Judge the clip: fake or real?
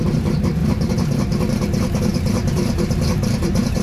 fake